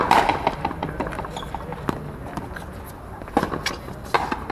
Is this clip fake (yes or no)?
no